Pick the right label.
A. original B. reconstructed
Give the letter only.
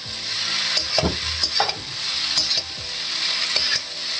A